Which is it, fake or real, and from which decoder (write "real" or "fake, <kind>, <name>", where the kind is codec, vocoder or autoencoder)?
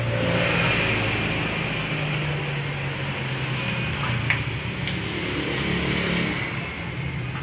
real